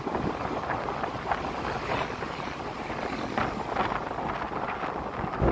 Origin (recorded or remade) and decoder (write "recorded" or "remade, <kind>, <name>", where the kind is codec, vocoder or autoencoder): recorded